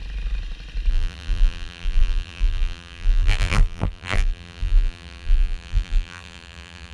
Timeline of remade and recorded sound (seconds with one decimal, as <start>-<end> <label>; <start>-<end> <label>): 0.0-0.9 recorded; 0.9-6.9 remade

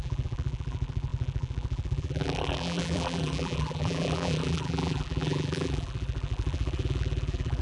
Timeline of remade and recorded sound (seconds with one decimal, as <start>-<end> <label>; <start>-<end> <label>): 0.0-7.6 remade

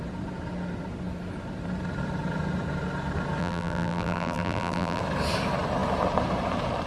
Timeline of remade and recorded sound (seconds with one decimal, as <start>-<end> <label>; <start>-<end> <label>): 0.0-3.4 recorded; 3.4-5.0 remade; 5.0-6.9 recorded

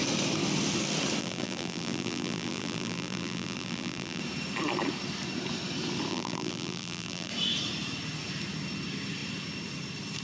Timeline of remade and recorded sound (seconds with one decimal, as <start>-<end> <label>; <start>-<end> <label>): 0.0-1.2 recorded; 1.2-4.2 remade; 4.2-6.1 recorded; 6.1-7.3 remade; 7.3-10.2 recorded

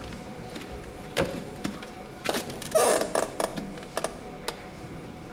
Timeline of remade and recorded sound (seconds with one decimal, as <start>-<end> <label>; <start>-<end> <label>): 0.0-3.5 remade; 3.5-4.6 recorded; 4.6-5.3 remade